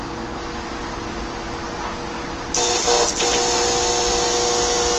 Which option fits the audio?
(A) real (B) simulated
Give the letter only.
A